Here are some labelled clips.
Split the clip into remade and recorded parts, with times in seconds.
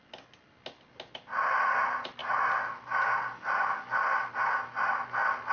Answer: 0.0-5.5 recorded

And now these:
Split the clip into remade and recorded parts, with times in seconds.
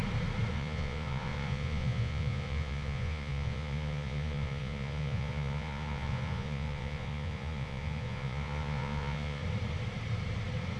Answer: 0.0-0.5 recorded; 0.5-9.4 remade; 9.4-10.8 recorded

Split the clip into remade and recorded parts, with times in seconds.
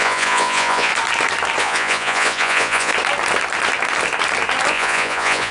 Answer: 0.0-0.9 remade; 0.9-1.6 recorded; 1.6-2.9 remade; 2.9-4.7 recorded; 4.7-5.5 remade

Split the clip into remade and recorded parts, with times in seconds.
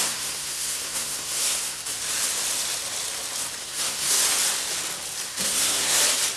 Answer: 0.0-1.8 remade; 1.8-3.6 recorded; 3.6-4.2 remade; 4.2-5.3 recorded; 5.3-6.0 remade; 6.0-6.4 recorded